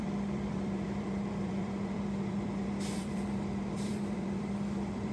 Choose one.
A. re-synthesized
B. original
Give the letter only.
A